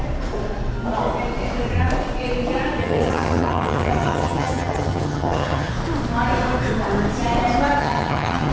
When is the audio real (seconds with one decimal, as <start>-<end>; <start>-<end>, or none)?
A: 0.0-2.8; 5.7-7.8